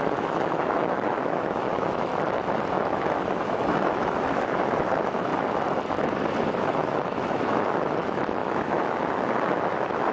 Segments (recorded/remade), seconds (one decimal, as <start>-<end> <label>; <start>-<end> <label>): 0.0-2.1 remade; 2.1-2.7 recorded; 2.7-5.3 remade; 5.3-6.5 recorded; 6.5-10.1 remade